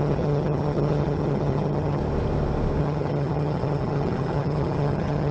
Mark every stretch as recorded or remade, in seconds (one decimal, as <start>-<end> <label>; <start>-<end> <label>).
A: 0.0-2.0 remade; 2.0-2.8 recorded; 2.8-5.3 remade